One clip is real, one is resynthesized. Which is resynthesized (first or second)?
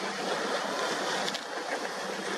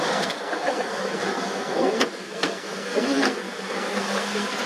second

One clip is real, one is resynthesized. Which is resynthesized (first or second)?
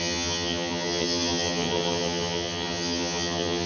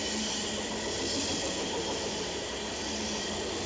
first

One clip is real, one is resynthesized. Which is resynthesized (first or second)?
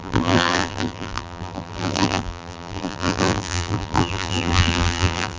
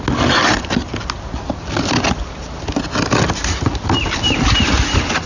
first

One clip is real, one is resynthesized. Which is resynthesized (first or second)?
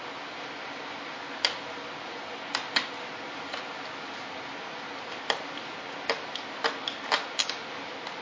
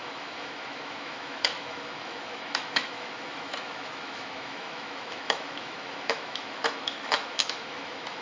second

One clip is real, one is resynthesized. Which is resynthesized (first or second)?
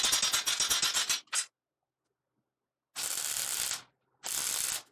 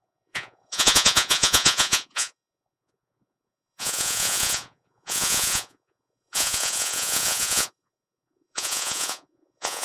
second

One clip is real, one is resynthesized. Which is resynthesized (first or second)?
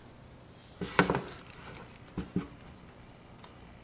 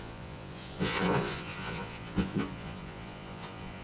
second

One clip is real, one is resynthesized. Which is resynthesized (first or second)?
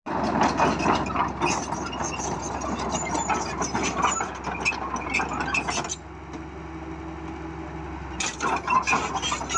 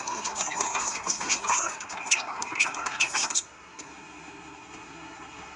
second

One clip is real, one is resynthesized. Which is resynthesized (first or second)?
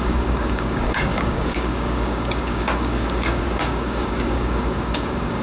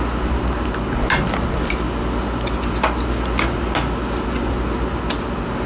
first